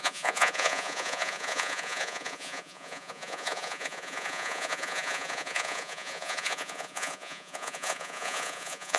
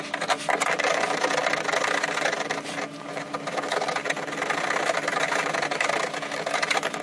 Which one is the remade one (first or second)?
first